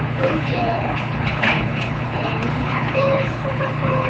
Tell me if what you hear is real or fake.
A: fake